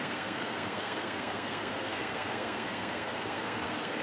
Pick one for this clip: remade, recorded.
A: remade